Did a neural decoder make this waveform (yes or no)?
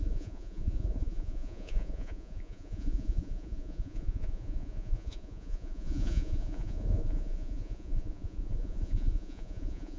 yes